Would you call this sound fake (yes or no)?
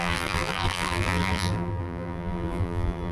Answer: yes